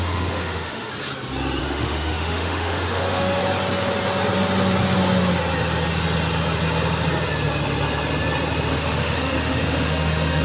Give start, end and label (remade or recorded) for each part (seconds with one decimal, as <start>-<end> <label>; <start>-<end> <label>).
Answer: 0.0-0.9 remade; 0.9-1.6 recorded; 1.6-3.4 remade; 3.4-8.7 recorded; 8.7-10.4 remade